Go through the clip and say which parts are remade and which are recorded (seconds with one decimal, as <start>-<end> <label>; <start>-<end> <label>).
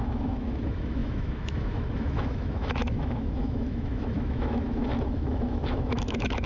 0.0-6.5 remade